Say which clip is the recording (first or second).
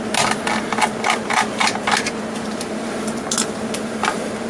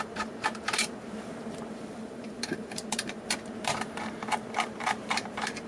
first